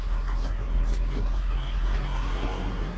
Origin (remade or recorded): remade